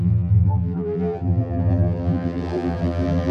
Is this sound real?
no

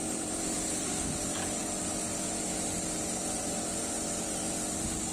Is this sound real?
no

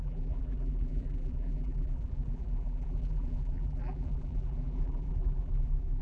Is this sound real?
no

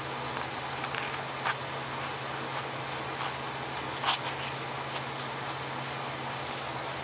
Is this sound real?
yes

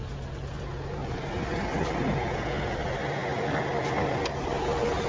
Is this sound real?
yes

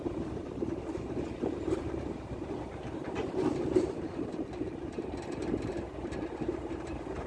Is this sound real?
no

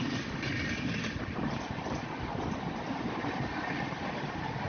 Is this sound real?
no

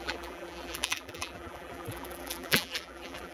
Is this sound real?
no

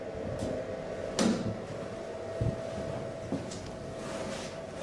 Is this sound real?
yes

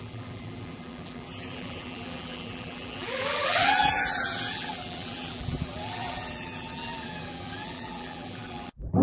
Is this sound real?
no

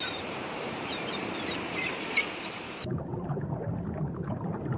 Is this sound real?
no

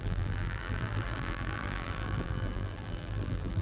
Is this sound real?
no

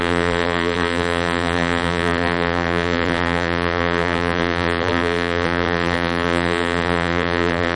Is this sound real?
no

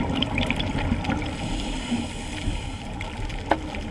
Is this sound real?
yes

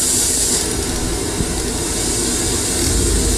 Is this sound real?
yes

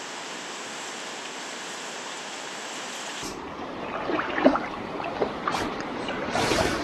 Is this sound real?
no